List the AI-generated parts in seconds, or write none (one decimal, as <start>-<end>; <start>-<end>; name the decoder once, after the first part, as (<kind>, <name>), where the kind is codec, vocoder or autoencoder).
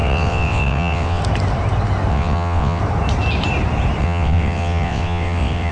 0.0-1.2 (vocoder, WaveNeXt); 2.1-2.8; 4.0-5.7